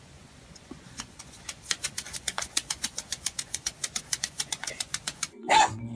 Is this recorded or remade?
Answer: remade